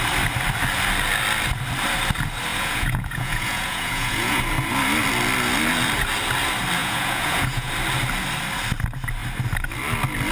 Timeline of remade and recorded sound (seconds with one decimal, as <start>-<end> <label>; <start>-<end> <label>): 0.0-2.5 recorded; 2.5-4.4 remade; 4.4-6.8 recorded; 6.8-7.7 remade; 7.7-10.3 recorded